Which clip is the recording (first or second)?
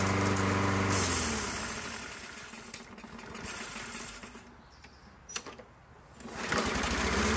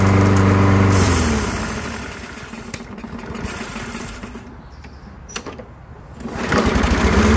first